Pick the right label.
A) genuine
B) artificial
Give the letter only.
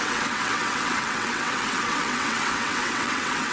B